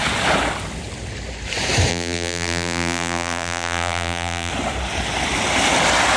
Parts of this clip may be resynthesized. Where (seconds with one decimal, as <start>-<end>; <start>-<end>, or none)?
1.9-4.5